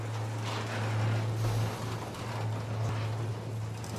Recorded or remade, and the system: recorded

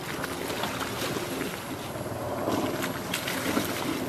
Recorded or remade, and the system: recorded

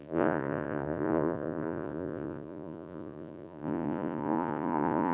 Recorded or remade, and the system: remade, vocoder, Vocos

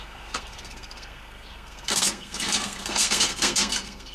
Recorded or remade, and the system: remade, codec, SNAC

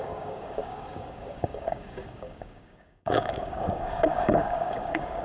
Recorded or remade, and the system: remade, codec, DAC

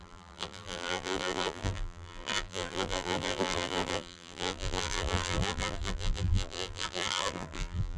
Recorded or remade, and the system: remade, vocoder, BigVGAN v2